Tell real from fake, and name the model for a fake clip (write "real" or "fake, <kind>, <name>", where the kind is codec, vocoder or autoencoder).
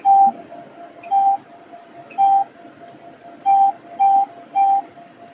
real